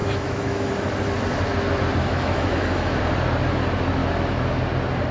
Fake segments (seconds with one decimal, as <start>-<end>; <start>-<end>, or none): 0.0-0.7; 2.0-3.0; 4.0-4.6

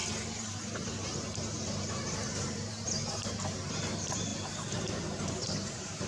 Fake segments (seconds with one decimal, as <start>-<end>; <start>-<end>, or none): 0.0-6.1

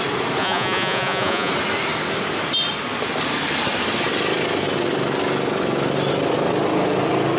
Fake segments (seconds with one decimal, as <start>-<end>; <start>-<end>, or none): 0.4-1.5

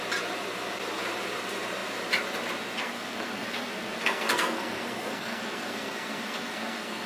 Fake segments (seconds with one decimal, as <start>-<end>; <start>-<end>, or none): 2.8-7.1

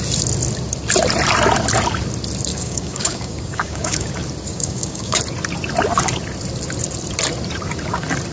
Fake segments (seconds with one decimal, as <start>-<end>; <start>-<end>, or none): 2.5-4.1; 4.5-5.2

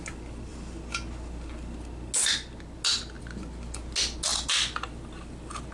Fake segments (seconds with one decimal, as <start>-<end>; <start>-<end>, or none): none